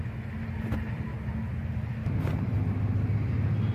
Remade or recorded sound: recorded